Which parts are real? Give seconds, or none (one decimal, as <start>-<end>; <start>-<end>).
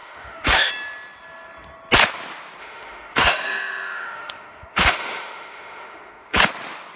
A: 0.7-2.6; 6.4-7.0